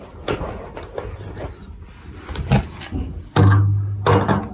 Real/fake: real